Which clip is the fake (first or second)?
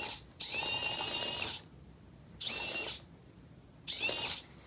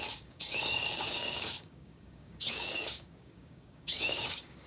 second